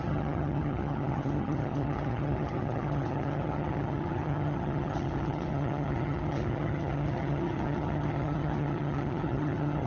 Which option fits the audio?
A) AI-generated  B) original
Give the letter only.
A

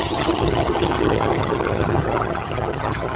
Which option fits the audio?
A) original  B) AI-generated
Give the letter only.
B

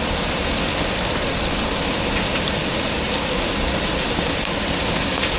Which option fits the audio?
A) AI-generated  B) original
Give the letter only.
B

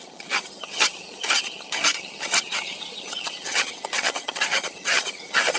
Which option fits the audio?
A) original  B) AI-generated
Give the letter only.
B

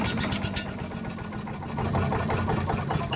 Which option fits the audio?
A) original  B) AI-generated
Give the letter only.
A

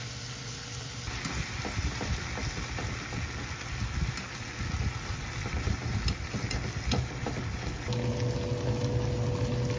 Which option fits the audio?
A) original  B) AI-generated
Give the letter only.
A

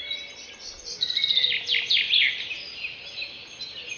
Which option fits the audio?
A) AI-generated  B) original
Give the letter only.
B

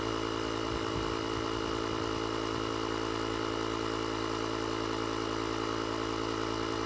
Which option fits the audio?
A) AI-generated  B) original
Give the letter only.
B